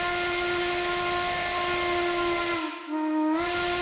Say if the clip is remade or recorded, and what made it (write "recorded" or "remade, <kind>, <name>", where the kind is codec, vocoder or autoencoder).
recorded